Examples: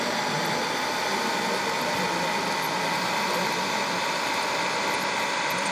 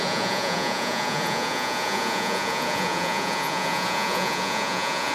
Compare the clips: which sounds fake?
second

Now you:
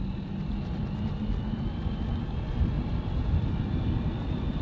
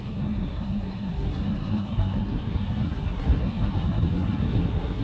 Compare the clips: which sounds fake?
second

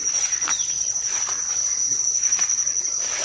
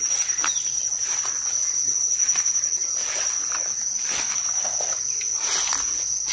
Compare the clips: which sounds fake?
first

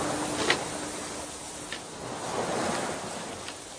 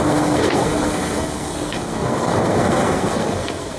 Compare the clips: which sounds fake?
second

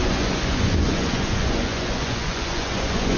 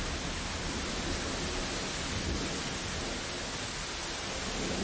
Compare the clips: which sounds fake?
first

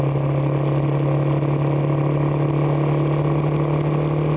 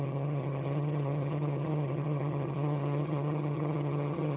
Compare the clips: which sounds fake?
second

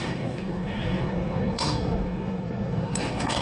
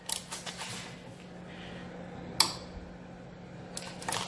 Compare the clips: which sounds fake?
first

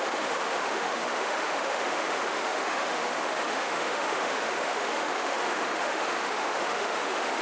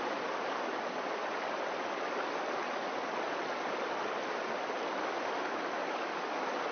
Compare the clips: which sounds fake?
first